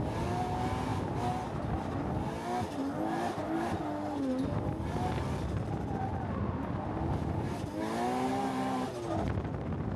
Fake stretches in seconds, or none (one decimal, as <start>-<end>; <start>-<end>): none